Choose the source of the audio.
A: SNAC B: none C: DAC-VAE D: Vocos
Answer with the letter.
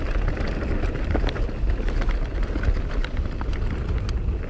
B